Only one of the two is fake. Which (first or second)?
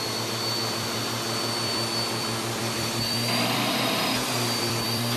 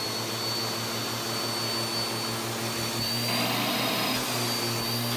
first